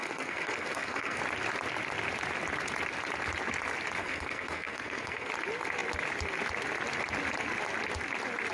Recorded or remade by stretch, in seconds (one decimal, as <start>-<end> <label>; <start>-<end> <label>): 0.0-1.2 remade; 1.2-4.0 recorded; 4.0-5.3 remade; 5.3-8.5 recorded